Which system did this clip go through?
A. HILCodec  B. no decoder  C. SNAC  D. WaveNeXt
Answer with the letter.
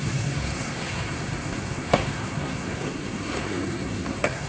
C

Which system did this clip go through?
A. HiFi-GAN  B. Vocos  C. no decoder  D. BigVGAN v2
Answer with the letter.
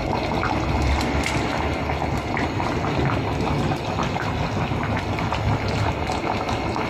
C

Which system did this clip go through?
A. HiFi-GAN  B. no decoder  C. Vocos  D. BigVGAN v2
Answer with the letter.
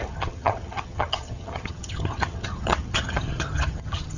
A